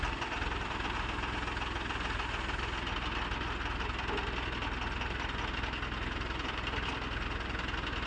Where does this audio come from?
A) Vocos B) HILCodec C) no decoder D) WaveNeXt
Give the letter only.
C